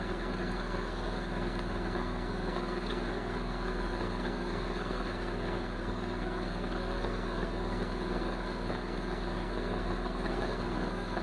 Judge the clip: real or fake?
fake